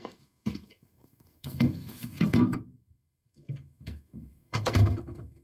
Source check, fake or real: fake